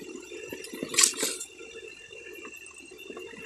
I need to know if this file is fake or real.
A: real